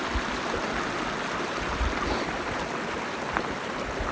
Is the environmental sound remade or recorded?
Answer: recorded